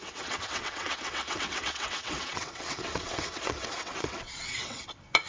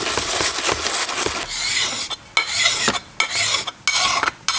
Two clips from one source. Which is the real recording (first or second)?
second